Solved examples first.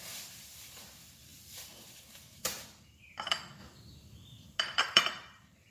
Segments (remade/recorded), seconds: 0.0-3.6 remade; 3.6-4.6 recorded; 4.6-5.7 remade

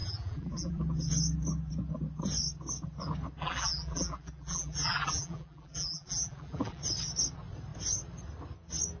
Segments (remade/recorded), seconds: 0.0-0.8 remade; 0.8-3.4 recorded; 3.4-6.8 remade; 6.8-9.0 recorded

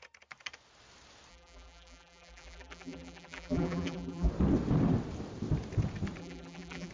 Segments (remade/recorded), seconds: 0.0-1.3 recorded; 1.3-4.3 remade; 4.3-6.2 recorded; 6.2-6.9 remade